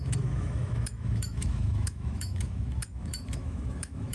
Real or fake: fake